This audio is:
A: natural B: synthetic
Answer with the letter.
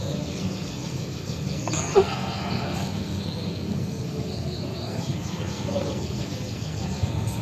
B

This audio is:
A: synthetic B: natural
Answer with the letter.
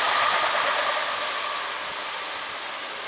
B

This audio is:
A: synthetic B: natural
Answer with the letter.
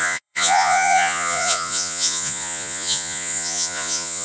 A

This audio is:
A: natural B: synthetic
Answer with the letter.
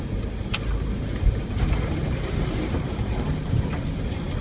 A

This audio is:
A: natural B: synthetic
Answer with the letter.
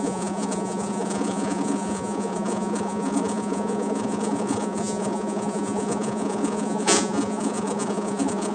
B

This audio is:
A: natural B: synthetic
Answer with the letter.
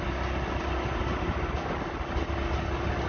A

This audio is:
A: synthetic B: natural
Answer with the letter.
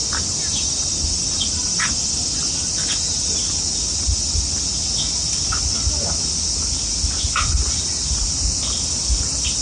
B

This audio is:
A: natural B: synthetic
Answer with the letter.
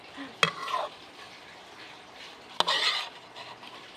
A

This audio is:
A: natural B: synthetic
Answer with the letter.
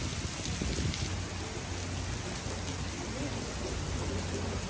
A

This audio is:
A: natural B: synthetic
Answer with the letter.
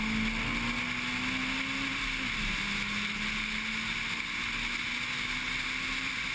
A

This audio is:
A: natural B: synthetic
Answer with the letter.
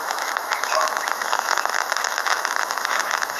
B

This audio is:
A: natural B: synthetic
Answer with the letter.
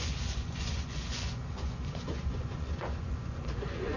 B